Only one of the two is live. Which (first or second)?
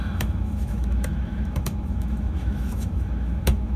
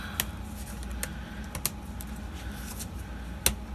second